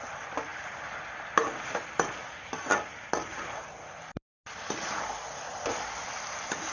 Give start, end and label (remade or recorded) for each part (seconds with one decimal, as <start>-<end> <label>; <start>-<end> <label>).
0.0-6.7 recorded